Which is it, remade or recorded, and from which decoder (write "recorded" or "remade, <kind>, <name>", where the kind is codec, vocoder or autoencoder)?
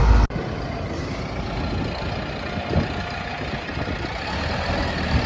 recorded